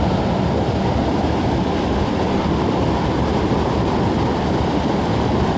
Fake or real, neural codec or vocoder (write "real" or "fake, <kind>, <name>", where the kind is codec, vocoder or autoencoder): real